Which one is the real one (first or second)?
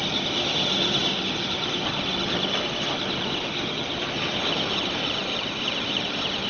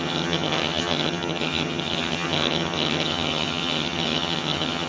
first